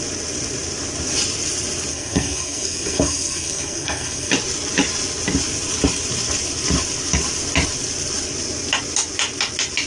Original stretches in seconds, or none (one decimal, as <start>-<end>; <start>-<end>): 0.0-1.9; 4.3-9.9